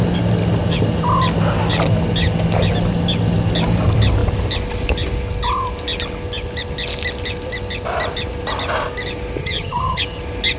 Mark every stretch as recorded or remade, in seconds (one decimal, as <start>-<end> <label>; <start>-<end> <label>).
0.0-9.4 recorded; 9.4-10.0 remade; 10.0-10.6 recorded